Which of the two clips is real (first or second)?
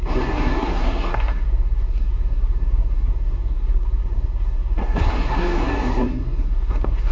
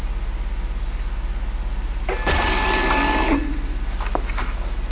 second